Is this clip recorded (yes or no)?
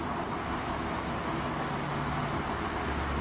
yes